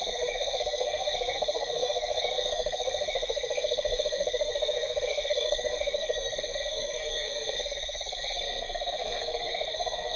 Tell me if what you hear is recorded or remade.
remade